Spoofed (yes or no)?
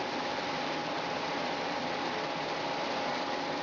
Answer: yes